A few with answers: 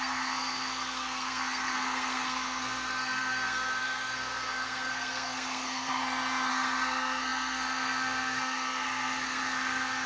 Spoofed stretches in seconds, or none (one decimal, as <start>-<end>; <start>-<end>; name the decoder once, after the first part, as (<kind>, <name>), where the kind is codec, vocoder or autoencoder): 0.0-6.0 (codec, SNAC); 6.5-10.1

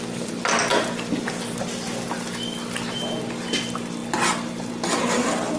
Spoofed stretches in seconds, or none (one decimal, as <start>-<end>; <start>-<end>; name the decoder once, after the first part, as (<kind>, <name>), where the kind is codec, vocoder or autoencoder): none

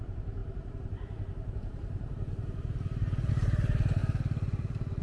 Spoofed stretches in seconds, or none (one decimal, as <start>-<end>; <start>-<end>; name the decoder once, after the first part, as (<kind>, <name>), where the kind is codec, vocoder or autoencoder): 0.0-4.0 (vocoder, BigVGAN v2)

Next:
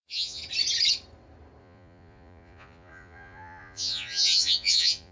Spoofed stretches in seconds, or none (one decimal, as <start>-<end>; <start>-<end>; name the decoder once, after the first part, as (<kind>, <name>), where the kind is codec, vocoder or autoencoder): 0.0-0.4 (vocoder, Vocos); 1.6-5.1

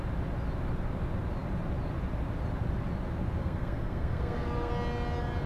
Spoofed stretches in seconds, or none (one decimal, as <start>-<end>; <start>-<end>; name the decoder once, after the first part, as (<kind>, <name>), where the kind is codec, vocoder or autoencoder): 3.4-4.7 (codec, SNAC)